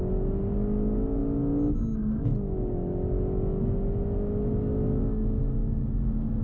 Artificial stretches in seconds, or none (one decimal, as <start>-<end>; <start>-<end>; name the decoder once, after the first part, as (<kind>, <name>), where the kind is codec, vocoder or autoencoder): none